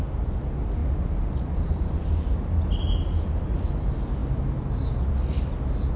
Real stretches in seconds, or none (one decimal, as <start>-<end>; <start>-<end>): 0.0-6.0